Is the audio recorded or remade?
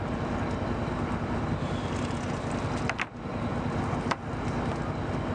recorded